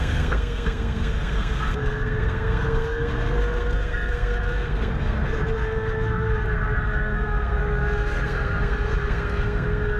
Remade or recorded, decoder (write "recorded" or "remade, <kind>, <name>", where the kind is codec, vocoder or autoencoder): remade, codec, SNAC